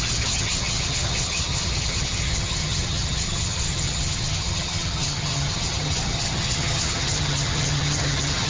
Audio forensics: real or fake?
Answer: fake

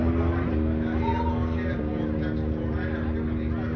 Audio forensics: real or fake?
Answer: real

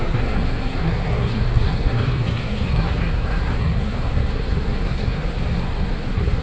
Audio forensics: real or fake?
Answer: fake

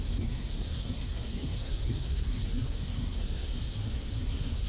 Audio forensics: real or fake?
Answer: fake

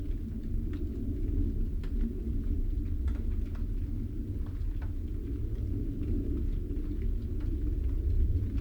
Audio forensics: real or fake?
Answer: real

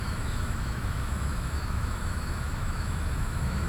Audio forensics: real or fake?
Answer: fake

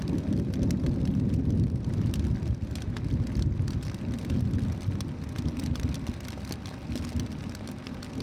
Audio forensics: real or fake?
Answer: real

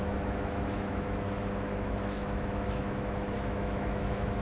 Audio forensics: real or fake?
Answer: fake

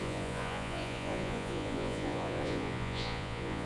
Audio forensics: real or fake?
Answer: fake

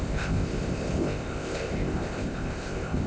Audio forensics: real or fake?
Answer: fake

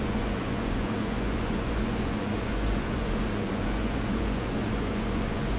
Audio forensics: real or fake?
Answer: fake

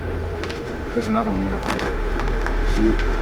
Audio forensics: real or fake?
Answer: fake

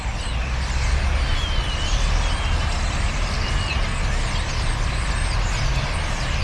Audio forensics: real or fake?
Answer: real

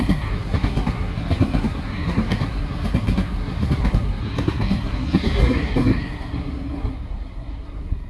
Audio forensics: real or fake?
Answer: fake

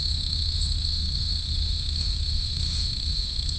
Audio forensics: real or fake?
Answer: fake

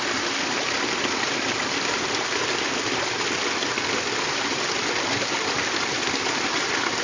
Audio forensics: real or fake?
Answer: real